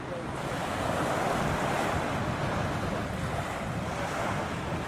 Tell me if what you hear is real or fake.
real